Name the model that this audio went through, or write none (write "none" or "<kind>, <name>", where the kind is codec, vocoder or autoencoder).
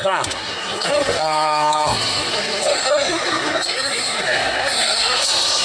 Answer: codec, SNAC